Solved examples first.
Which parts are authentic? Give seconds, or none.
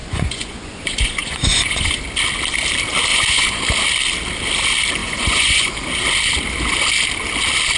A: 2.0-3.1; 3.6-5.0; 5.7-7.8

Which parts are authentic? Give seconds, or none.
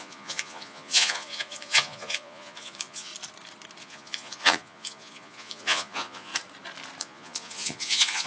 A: 3.1-3.8; 6.3-7.0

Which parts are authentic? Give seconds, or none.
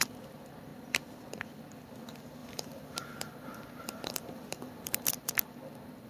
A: 0.0-2.4; 5.1-6.1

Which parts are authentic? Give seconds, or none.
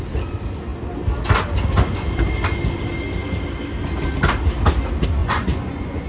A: 0.0-5.2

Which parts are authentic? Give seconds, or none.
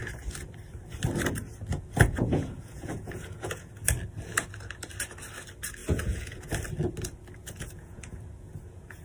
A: 0.0-1.7; 3.7-5.8; 6.4-7.4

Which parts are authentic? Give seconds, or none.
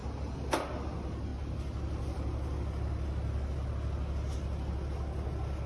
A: 0.0-5.7